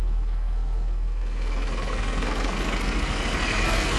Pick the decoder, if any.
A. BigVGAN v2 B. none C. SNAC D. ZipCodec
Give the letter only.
C